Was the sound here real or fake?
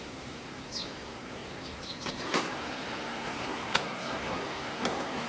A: fake